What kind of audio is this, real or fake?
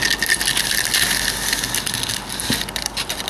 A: real